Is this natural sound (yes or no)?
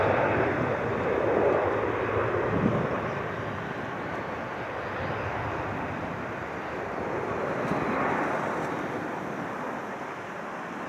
yes